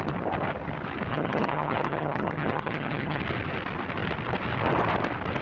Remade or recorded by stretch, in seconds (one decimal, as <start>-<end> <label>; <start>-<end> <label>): 0.0-1.1 recorded; 1.1-3.2 remade; 3.2-5.4 recorded